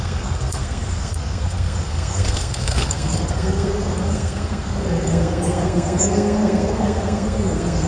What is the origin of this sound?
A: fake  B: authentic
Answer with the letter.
A